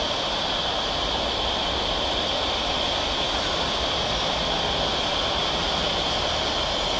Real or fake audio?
real